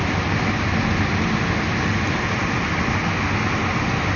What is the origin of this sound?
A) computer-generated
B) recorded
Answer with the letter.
B